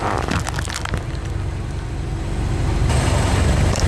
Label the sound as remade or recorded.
recorded